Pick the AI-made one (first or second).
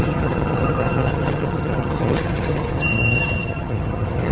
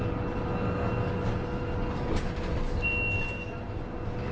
first